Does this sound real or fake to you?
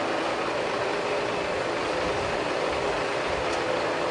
real